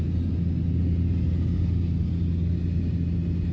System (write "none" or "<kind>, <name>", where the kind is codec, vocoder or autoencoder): none